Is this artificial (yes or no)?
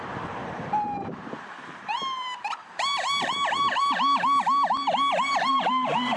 yes